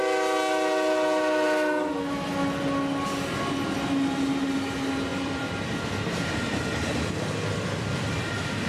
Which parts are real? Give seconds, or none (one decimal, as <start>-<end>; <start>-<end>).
0.0-5.1; 6.6-8.7

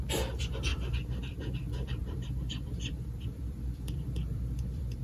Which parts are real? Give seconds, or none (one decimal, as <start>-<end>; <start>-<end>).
0.0-0.7; 1.4-2.0

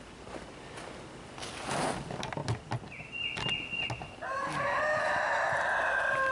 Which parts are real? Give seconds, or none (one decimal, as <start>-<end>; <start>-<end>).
0.0-6.3

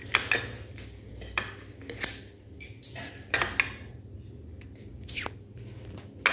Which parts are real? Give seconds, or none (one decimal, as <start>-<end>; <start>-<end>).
0.0-6.3

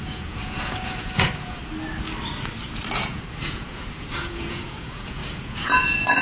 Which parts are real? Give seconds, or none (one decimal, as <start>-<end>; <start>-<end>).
1.6-2.9

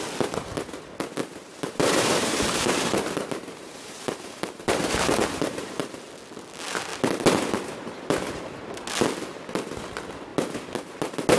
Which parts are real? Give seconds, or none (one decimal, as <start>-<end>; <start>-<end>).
0.0-1.2; 5.9-11.4